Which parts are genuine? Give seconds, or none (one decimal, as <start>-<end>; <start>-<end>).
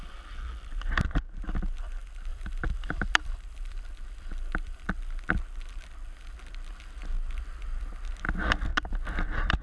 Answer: 0.0-2.3; 4.9-8.7